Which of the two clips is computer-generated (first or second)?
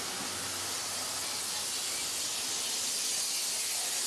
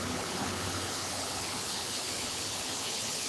second